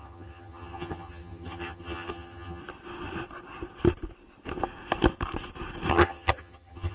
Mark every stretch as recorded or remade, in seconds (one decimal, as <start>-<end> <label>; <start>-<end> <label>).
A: 0.0-2.6 remade; 2.6-5.9 recorded; 5.9-6.9 remade